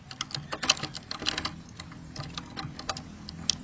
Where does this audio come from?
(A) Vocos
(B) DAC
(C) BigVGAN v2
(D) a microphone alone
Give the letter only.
D